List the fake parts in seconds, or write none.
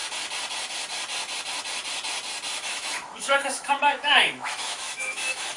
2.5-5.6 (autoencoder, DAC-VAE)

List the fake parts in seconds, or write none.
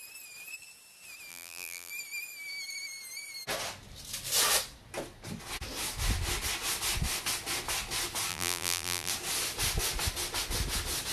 1.3-1.9 (vocoder, BigVGAN v2); 8.3-9.1